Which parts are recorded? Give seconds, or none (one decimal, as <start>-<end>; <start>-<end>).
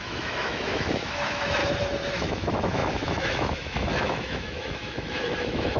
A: 1.6-2.1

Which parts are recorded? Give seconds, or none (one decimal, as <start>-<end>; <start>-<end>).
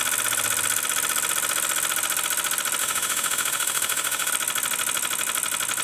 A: 0.0-2.8; 4.3-5.8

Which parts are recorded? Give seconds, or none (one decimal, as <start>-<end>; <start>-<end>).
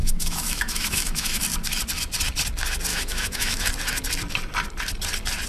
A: 1.4-2.9; 3.7-5.5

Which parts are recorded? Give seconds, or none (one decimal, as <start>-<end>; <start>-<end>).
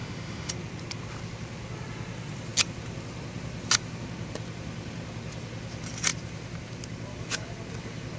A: 0.5-8.2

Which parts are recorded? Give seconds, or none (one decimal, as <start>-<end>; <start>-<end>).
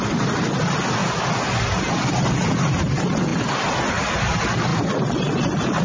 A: 0.0-5.8